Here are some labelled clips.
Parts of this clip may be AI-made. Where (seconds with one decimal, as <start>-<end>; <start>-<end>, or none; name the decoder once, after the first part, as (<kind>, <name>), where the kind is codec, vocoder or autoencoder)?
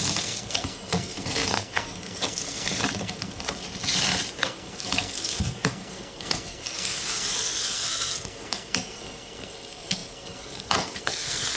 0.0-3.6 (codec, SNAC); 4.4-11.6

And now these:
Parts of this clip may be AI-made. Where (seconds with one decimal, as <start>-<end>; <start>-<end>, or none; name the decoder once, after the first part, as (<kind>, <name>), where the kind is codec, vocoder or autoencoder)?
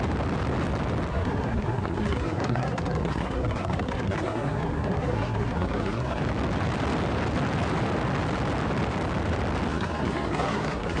1.1-6.2 (codec, SNAC); 9.7-11.0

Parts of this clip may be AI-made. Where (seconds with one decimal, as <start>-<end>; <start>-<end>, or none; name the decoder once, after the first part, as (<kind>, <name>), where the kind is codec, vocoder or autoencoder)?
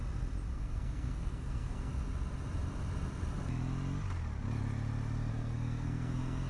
0.5-1.9 (codec, SNAC); 5.3-6.5